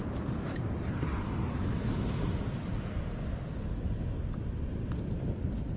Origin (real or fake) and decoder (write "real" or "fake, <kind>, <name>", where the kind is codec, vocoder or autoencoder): real